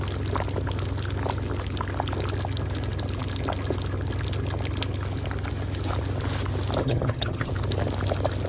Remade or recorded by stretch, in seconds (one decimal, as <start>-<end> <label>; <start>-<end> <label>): 0.0-6.8 recorded; 6.8-7.5 remade; 7.5-8.5 recorded